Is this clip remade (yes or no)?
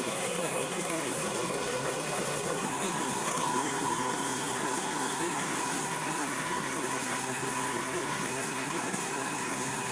yes